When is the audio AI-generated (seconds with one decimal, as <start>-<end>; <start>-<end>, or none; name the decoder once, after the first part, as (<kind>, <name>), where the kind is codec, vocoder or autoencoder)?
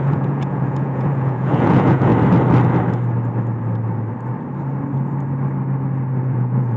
0.0-2.1 (vocoder, Vocos); 6.2-6.8